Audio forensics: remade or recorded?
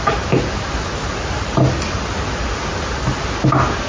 recorded